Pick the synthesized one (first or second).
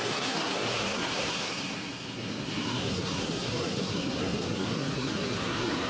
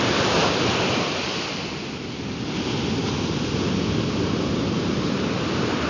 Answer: first